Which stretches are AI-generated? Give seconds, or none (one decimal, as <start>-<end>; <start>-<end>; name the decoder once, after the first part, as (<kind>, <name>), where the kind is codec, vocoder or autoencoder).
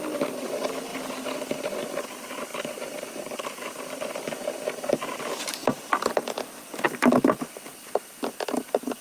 2.5-4.2 (vocoder, BigVGAN v2); 5.6-8.5